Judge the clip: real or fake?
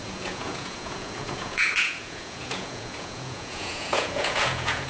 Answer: fake